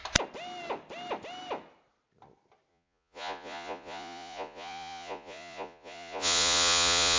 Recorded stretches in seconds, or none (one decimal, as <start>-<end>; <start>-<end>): 0.0-2.7